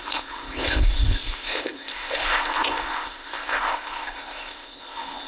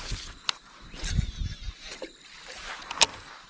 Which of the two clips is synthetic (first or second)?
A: first